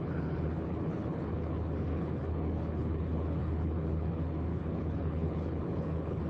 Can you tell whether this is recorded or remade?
remade